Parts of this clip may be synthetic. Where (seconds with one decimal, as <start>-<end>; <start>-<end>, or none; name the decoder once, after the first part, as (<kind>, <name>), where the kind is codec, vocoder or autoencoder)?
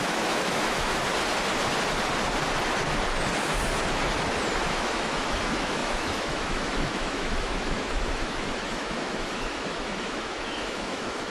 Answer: 0.0-0.9 (autoencoder, DAC-VAE); 4.6-11.3